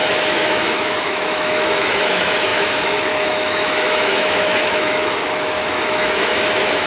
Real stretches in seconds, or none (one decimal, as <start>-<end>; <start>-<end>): none